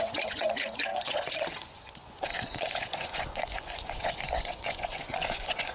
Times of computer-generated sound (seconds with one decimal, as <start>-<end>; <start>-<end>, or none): 0.0-5.7